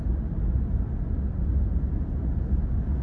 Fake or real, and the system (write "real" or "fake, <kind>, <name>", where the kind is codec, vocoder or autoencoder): real